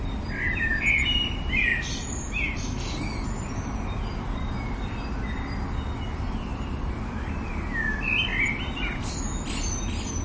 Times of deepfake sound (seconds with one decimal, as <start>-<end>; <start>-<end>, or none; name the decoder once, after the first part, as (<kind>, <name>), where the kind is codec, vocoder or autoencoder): 6.5-7.0 (vocoder, BigVGAN v2)